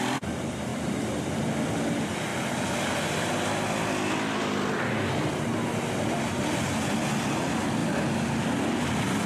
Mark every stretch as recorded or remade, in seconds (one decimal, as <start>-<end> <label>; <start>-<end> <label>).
0.0-9.3 recorded